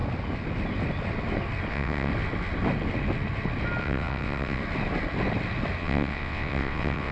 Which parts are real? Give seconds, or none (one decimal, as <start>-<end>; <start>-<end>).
0.0-1.7; 2.1-3.8; 4.6-5.8